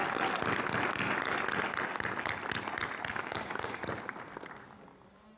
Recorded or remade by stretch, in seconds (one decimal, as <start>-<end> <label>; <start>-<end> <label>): 0.0-3.1 recorded; 3.1-3.8 remade; 3.8-5.4 recorded